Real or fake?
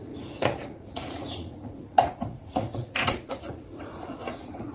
fake